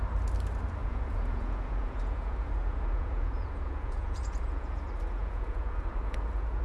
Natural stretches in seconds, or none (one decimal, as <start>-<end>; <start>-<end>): 0.0-0.8; 4.8-5.2

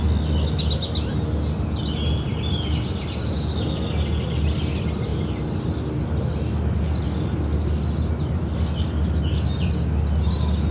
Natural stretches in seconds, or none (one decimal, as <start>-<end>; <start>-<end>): 0.0-10.7

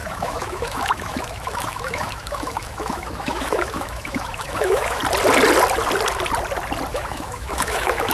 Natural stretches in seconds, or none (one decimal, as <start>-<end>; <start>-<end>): 5.0-6.9

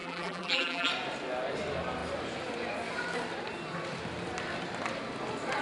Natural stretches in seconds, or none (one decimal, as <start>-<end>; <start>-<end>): 0.9-5.6